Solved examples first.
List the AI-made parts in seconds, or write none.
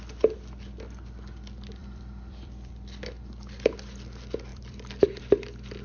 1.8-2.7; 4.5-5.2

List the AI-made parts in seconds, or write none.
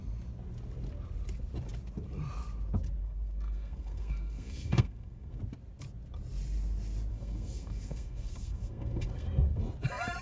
3.0-5.4; 7.1-9.6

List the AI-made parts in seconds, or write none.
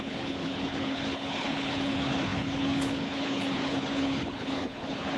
0.0-5.2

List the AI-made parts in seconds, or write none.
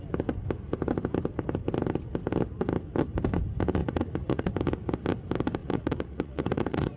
3.8-4.5; 5.6-7.0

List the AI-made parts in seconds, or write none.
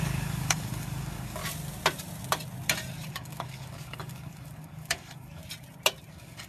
0.0-1.4; 3.1-5.4; 6.1-6.5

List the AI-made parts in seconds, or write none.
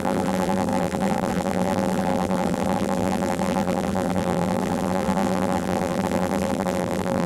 0.0-7.3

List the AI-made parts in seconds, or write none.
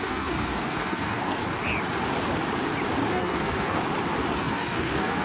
0.0-1.4; 3.1-3.8; 4.4-5.2